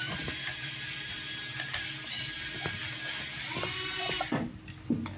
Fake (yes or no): no